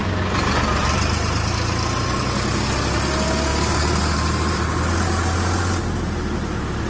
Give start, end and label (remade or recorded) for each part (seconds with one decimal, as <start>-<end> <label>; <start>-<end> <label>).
0.0-0.8 recorded; 0.8-1.5 remade; 1.5-3.5 recorded; 3.5-4.8 remade; 4.8-6.9 recorded